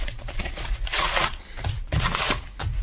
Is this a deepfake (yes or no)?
yes